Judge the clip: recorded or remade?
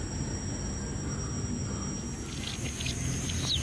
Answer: recorded